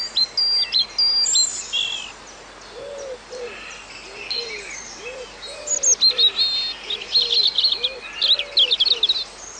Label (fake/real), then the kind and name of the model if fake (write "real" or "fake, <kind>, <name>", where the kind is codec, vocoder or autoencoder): real